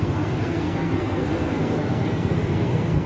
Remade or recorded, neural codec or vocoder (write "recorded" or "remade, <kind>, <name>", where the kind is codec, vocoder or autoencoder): remade, codec, SNAC